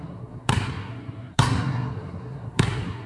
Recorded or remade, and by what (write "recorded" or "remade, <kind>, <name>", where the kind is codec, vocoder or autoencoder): remade, codec, SNAC